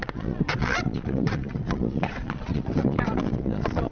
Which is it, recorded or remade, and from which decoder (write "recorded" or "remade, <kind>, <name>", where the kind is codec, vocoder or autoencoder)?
remade, vocoder, Vocos